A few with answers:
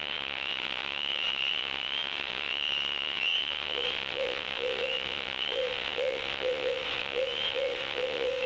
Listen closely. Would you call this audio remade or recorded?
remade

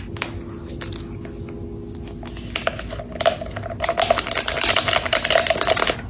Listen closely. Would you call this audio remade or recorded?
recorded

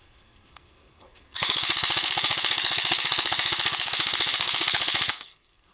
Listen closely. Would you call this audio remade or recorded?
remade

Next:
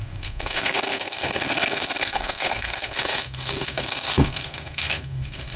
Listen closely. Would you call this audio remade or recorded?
remade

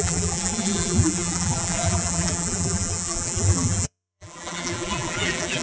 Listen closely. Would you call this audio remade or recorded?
remade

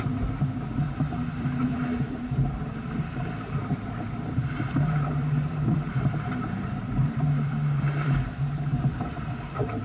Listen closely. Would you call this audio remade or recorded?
remade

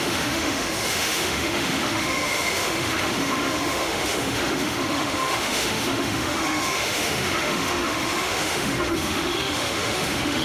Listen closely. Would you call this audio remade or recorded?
remade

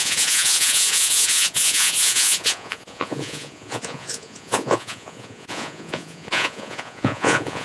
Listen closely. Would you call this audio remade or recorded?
remade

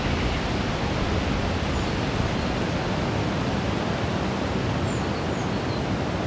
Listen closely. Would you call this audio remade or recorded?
recorded